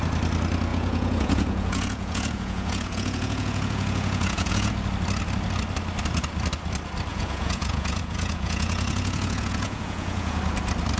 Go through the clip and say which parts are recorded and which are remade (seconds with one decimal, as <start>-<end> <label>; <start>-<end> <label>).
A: 0.0-0.7 recorded; 0.7-4.7 remade; 4.7-7.1 recorded; 7.1-10.4 remade; 10.4-11.0 recorded